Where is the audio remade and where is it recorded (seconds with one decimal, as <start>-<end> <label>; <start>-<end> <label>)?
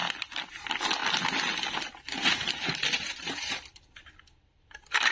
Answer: 0.0-5.1 recorded